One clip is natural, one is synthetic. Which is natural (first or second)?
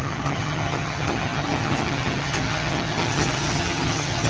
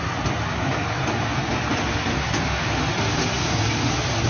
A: second